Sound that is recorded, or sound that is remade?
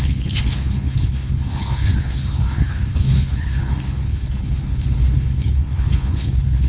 remade